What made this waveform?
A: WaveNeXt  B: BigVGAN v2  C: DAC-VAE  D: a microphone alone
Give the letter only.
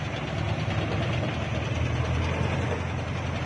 D